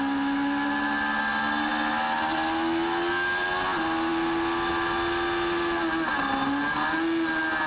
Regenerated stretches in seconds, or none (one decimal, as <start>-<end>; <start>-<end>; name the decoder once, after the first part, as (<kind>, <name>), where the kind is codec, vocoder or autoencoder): none